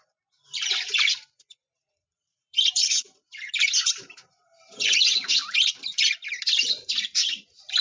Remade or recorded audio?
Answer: remade